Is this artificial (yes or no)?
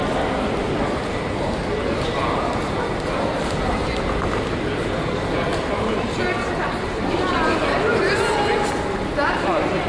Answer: no